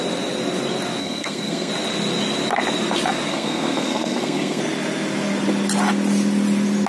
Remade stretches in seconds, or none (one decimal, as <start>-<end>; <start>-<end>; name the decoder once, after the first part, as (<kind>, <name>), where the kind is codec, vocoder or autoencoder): 1.0-1.7 (codec, SNAC); 3.3-4.6